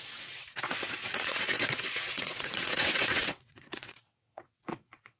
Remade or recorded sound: remade